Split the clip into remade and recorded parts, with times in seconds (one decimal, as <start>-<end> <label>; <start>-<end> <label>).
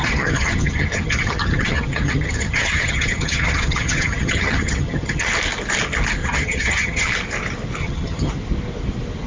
0.0-5.3 remade; 5.3-6.2 recorded; 6.2-7.1 remade; 7.1-7.8 recorded; 7.8-8.3 remade; 8.3-9.3 recorded